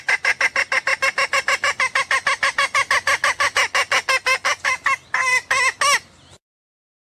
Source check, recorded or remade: recorded